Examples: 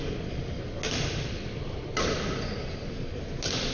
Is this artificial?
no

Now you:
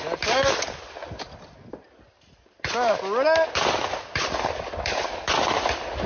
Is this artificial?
no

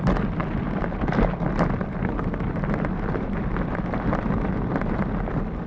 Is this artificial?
no